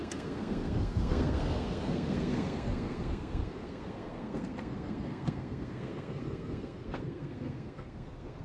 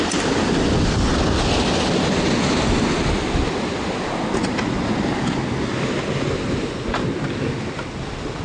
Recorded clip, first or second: second